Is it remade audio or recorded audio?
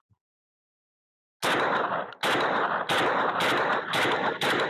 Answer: recorded